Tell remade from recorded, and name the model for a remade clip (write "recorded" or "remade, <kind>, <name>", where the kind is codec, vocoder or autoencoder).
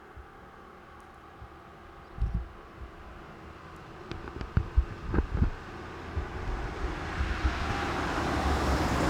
recorded